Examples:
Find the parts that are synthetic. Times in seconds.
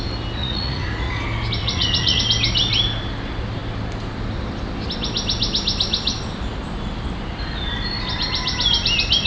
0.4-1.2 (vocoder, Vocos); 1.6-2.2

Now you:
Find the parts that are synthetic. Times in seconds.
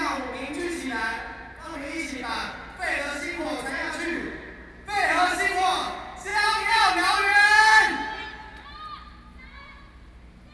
none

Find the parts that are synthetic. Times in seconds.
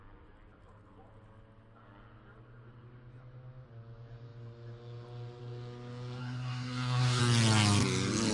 6.2-7.2 (codec, SNAC)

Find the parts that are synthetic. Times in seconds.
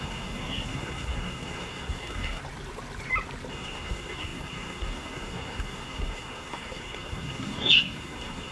0.0-2.4 (codec, SNAC); 3.5-8.5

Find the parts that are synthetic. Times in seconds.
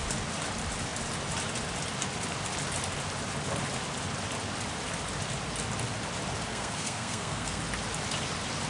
6.5-7.6 (codec, SNAC)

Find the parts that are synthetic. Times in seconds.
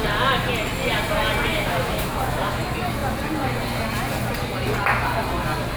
1.5-2.6 (autoencoder, DAC-VAE)